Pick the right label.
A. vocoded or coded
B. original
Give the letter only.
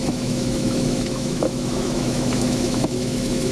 A